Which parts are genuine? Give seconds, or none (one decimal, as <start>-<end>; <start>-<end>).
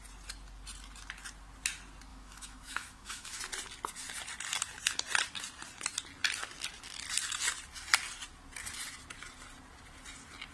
0.0-2.1; 3.4-10.5